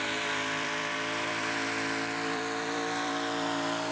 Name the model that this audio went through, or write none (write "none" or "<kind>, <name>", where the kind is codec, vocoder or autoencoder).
vocoder, BigVGAN v2